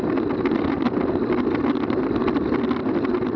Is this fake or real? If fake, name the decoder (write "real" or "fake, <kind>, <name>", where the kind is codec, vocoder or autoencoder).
real